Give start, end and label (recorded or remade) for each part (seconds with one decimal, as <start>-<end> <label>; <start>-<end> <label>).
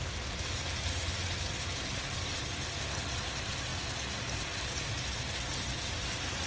0.0-6.5 recorded